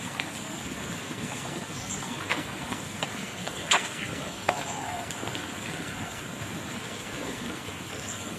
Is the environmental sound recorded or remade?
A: remade